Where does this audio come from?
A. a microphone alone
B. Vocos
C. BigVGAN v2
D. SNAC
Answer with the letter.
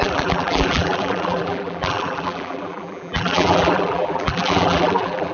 C